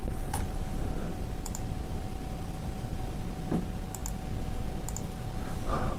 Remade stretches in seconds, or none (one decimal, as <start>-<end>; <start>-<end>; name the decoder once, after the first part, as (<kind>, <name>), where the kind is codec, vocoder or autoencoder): 0.0-3.6 (vocoder, BigVGAN v2)